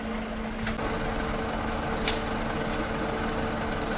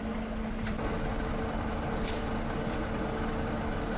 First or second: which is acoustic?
first